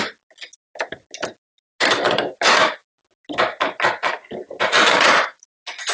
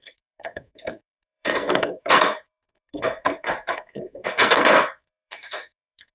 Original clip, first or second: first